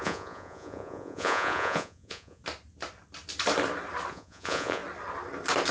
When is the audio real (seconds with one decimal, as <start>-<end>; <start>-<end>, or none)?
2.4-4.1; 4.8-5.7